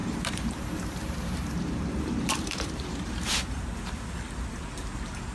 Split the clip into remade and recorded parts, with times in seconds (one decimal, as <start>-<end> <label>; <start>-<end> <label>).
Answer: 0.0-3.6 remade; 3.6-4.6 recorded; 4.6-5.3 remade